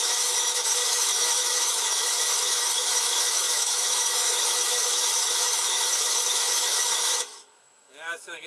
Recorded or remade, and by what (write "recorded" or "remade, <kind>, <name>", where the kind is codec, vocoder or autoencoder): remade, autoencoder, DAC-VAE